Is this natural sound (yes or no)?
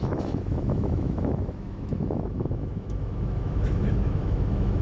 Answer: no